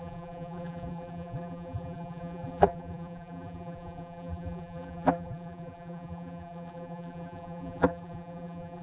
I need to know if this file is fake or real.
fake